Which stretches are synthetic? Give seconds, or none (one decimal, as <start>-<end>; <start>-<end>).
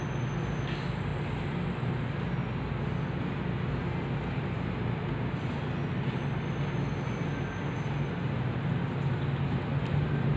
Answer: none